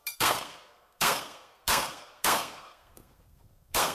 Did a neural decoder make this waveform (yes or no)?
yes